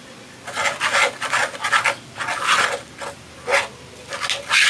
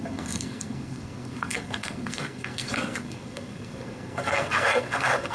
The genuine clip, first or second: first